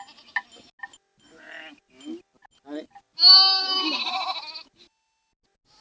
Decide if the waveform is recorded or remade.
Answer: recorded